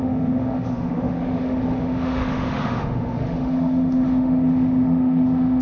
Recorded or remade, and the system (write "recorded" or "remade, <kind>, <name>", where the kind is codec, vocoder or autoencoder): remade, autoencoder, DAC-VAE